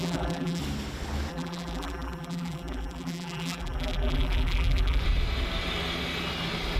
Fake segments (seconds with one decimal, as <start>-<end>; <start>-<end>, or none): 0.0-0.6; 1.3-5.0